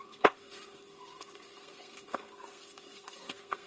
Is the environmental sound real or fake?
fake